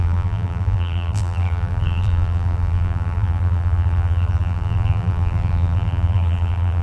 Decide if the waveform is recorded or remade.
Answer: remade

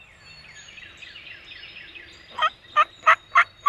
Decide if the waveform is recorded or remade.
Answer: remade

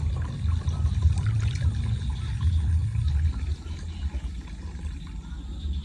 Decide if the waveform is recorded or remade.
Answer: recorded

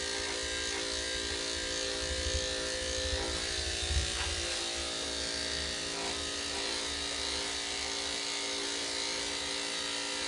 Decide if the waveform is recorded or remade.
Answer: recorded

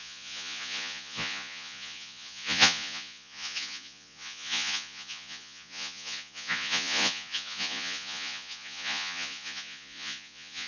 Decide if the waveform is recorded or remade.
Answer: remade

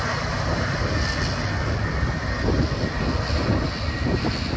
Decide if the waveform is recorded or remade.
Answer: recorded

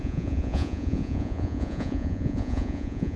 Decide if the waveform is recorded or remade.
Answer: remade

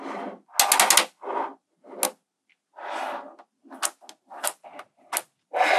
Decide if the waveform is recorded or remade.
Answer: recorded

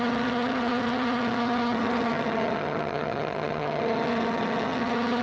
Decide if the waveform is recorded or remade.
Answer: remade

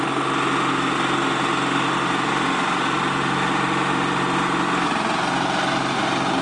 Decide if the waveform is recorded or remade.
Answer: recorded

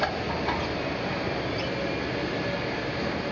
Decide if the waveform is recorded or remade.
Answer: recorded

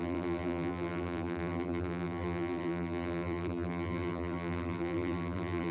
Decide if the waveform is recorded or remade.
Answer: remade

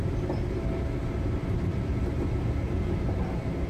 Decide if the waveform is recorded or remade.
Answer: recorded